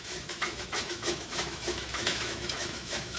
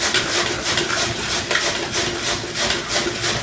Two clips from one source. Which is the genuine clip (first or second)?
second